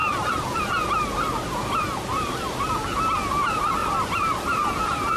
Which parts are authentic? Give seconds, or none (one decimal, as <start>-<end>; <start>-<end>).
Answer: 0.0-5.2